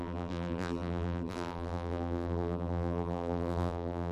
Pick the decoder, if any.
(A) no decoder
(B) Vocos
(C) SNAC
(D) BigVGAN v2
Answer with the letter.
D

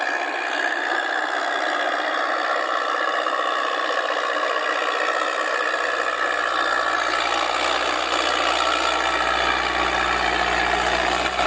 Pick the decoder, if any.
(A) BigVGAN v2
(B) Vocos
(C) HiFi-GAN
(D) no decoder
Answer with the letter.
D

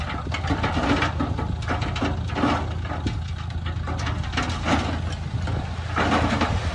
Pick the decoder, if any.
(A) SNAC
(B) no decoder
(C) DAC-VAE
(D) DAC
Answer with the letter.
B